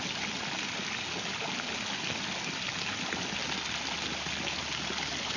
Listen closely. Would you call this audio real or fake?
real